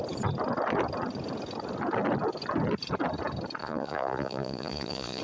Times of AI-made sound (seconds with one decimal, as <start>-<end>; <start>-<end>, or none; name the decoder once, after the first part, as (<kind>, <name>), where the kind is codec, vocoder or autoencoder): 3.6-5.2 (vocoder, Vocos)